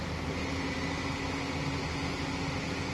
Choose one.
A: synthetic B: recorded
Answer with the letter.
B